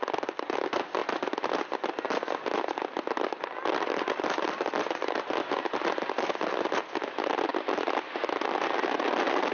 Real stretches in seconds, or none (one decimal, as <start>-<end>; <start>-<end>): 0.0-9.5

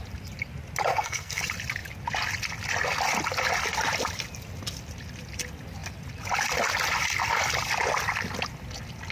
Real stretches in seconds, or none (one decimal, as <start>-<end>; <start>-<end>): 0.0-0.9; 1.4-9.1

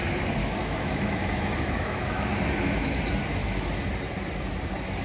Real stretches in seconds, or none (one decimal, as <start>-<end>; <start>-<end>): 0.0-0.4; 3.0-3.4; 3.9-5.0

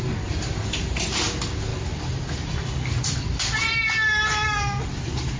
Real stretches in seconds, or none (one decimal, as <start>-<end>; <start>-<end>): 0.0-5.4

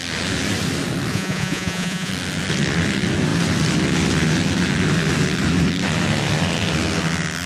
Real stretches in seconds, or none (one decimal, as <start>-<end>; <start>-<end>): 0.0-1.1; 2.1-7.5

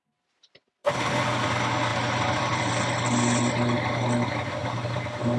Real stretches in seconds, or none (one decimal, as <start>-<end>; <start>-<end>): 0.0-0.8; 1.5-1.9; 2.7-5.4

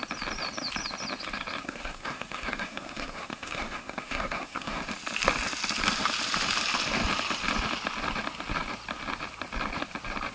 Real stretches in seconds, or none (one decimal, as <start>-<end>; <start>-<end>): 0.0-1.6; 4.8-10.3

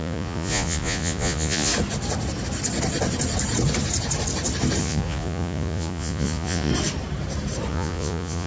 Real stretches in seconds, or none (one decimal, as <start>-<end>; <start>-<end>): 1.7-4.8; 6.7-7.7